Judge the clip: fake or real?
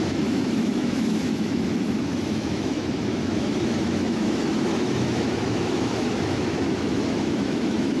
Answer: fake